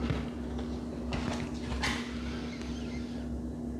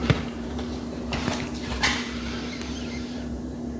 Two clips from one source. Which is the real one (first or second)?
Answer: first